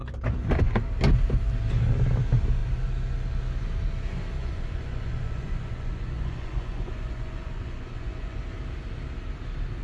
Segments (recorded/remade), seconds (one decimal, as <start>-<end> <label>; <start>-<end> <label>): 0.0-4.4 recorded; 4.4-8.4 remade; 8.4-9.8 recorded